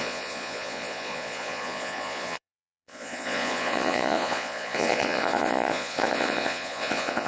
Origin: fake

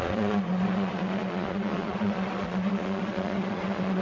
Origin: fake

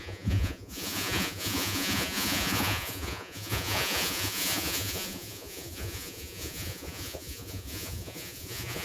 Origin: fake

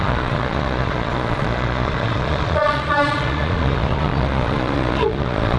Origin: fake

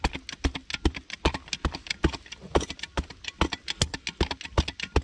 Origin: real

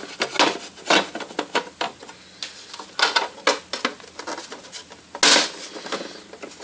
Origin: real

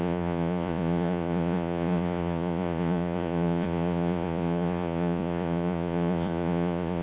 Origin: fake